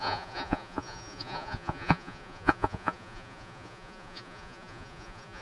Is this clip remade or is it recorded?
remade